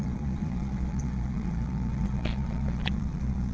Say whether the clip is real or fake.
fake